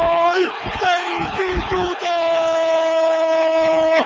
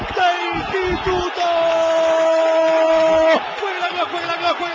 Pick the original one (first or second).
second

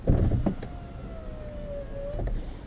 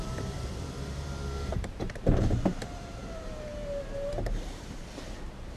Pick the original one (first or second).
first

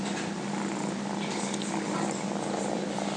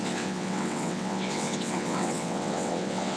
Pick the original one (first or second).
first